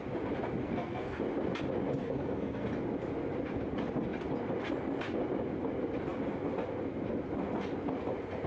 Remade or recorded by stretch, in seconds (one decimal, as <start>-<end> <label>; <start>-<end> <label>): 0.0-0.6 recorded; 0.6-1.2 remade; 1.2-2.0 recorded; 2.0-2.7 remade; 2.7-8.5 recorded